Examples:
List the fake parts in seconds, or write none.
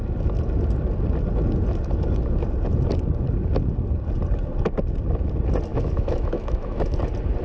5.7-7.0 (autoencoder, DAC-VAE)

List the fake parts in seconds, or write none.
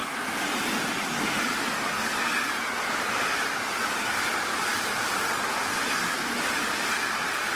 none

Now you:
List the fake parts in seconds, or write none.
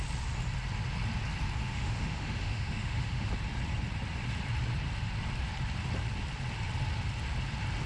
1.6-3.3 (autoencoder, DAC-VAE)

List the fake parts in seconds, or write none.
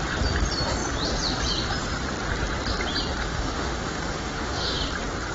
3.2-4.8 (autoencoder, DAC-VAE)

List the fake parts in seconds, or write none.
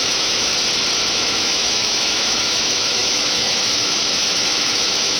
0.0-0.5 (autoencoder, DAC-VAE); 1.1-5.2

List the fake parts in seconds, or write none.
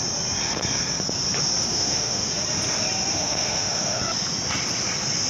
1.7-2.3 (autoencoder, DAC-VAE); 3.1-4.0